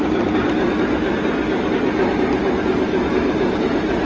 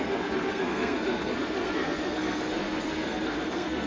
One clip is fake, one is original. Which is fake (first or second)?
second